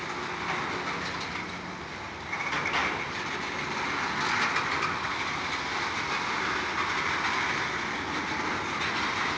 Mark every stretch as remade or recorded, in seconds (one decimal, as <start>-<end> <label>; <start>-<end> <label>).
0.0-9.4 recorded